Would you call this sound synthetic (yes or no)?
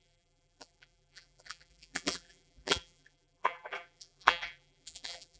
yes